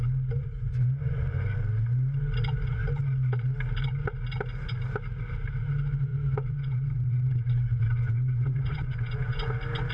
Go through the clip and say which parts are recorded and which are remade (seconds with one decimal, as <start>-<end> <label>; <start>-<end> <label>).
0.0-6.1 recorded; 6.1-9.5 remade; 9.5-9.9 recorded